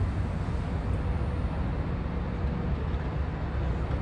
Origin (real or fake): real